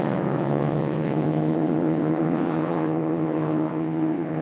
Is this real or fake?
fake